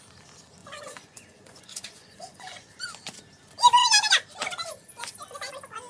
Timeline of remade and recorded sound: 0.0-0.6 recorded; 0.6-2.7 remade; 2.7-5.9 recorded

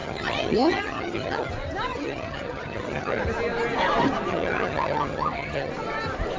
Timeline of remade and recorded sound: 0.0-1.5 remade; 1.5-1.9 recorded; 1.9-3.2 remade; 3.2-4.3 recorded; 4.3-5.7 remade; 5.7-6.4 recorded